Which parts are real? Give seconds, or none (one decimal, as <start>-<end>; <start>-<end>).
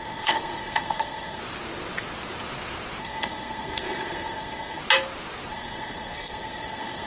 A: 1.4-3.0; 4.8-5.5